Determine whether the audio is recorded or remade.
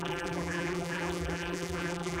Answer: remade